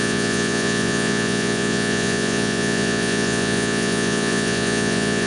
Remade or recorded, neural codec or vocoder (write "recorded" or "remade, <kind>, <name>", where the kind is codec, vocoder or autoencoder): remade, vocoder, Vocos